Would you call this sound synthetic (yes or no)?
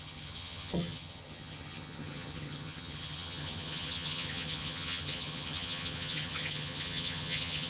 yes